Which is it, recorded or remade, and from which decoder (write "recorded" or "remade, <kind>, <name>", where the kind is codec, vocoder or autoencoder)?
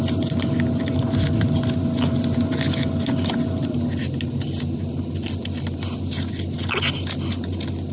recorded